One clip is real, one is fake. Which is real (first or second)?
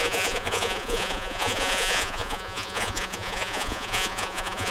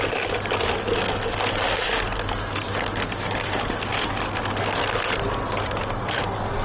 second